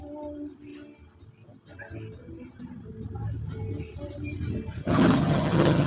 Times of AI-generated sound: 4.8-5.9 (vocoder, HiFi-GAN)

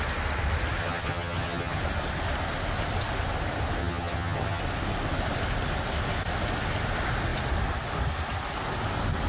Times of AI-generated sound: 0.8-1.8 (vocoder, HiFi-GAN); 3.8-4.6

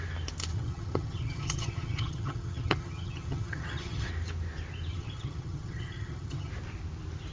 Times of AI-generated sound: 0.5-4.1 (vocoder, HiFi-GAN); 4.9-6.5

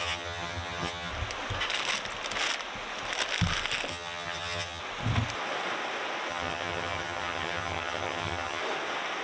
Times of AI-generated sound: 0.0-1.1 (vocoder, HiFi-GAN); 3.9-4.8; 6.3-8.6